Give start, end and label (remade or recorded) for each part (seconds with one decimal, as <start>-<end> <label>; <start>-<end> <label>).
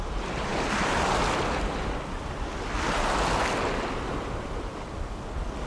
0.0-4.7 recorded; 4.7-5.3 remade; 5.3-5.7 recorded